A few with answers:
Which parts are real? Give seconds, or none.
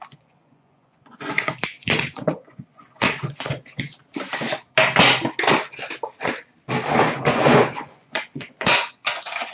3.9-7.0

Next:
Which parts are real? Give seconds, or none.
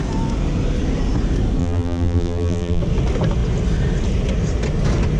0.0-1.6; 2.8-5.2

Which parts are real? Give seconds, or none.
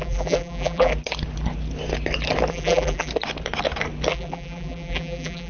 0.9-2.5; 3.1-4.1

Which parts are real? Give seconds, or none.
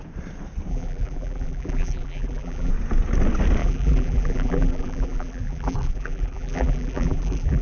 0.0-0.7; 2.7-3.6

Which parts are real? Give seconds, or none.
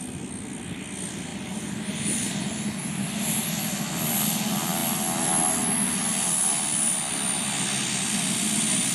0.0-8.9